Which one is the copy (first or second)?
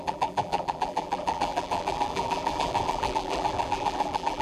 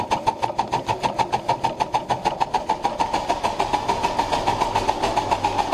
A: first